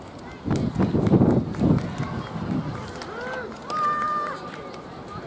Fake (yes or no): no